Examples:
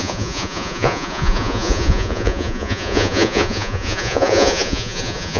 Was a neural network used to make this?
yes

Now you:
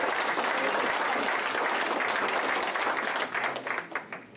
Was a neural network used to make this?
no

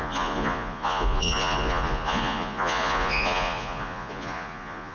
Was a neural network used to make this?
yes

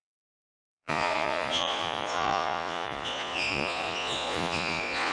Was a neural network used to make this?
yes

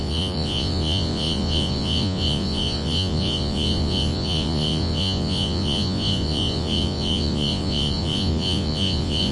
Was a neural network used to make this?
yes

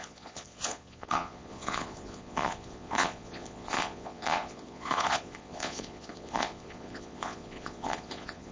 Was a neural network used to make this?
yes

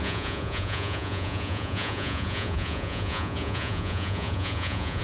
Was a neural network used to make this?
yes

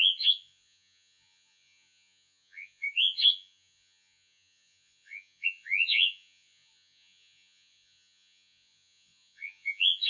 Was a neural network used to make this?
yes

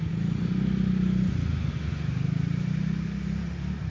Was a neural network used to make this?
no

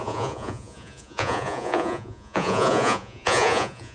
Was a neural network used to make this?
yes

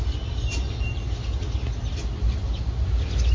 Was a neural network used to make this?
no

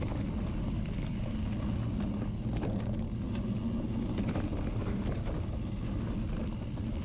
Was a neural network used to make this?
no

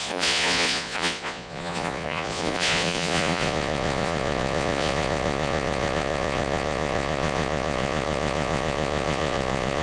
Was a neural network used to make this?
yes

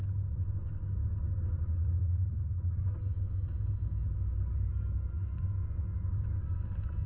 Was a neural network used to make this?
no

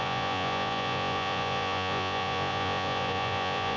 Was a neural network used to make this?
yes